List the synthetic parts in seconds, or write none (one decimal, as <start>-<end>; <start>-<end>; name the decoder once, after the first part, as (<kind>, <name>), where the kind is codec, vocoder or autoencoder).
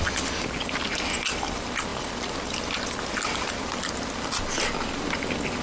none